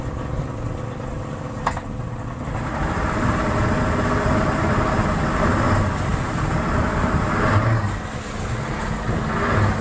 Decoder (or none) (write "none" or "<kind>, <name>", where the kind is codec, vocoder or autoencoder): none